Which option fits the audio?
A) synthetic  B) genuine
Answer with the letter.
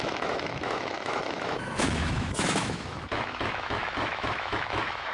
A